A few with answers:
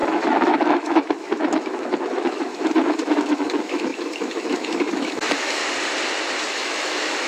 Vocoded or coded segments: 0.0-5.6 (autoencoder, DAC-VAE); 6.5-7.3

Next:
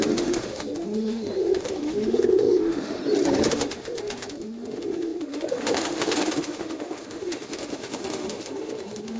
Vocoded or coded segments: 0.0-3.0 (autoencoder, DAC-VAE); 3.5-9.2

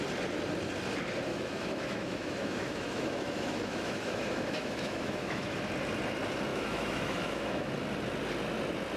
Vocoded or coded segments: 1.3-5.6 (autoencoder, DAC-VAE); 6.5-7.7

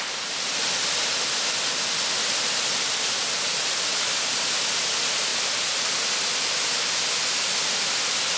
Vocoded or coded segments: none

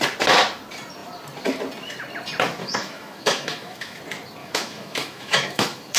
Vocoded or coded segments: 2.6-4.0 (autoencoder, DAC-VAE); 4.4-6.0